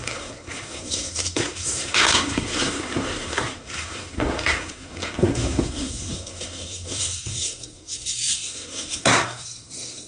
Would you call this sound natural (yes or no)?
no